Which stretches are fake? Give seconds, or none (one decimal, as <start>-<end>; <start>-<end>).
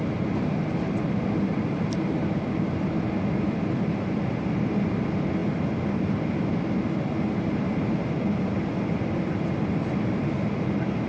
none